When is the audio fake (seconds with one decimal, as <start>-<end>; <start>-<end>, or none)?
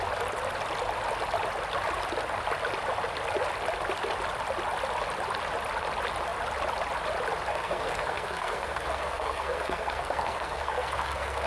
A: 7.5-11.5